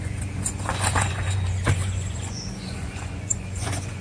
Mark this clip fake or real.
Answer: fake